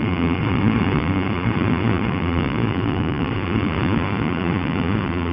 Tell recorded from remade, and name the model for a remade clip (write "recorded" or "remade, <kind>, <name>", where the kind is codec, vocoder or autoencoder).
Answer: remade, vocoder, Vocos